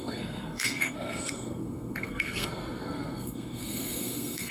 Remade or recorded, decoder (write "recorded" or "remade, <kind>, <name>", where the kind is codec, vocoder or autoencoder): remade, codec, SNAC